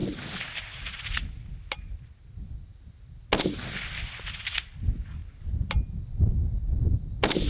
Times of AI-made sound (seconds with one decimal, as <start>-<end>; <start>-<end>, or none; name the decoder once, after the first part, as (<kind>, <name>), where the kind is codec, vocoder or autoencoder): none